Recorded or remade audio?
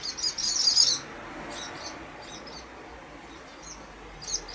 recorded